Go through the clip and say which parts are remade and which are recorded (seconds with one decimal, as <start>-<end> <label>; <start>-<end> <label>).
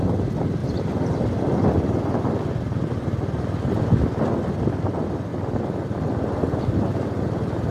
0.0-7.7 recorded